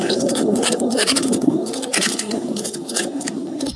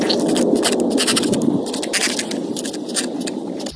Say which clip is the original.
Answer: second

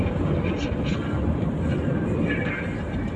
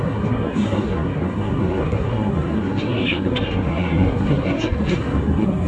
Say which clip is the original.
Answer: first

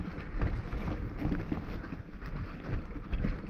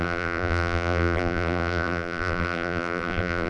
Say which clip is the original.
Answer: first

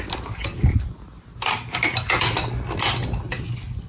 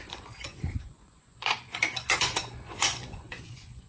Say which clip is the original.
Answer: first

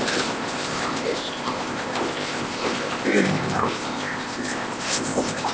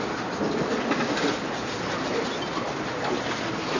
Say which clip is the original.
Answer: second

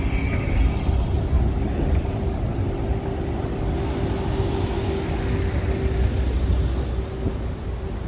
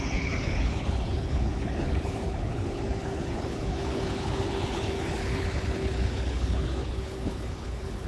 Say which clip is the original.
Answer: first